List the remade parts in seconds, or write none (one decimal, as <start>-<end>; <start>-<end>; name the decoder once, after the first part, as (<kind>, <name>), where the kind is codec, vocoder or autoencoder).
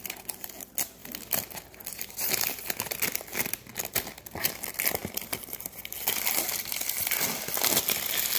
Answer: none